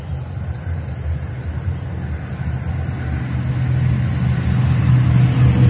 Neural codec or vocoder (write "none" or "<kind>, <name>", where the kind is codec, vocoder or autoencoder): none